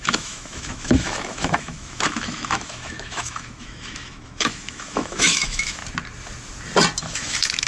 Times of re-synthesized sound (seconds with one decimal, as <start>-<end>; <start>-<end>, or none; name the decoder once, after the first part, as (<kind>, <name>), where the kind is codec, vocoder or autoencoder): 0.0-5.8 (autoencoder, DAC-VAE); 7.0-7.7